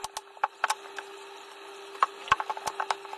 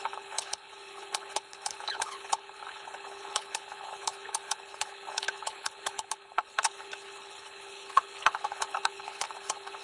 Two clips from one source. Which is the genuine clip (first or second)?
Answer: first